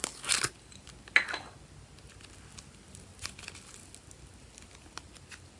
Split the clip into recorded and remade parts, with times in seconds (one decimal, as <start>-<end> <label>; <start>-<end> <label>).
0.0-5.6 recorded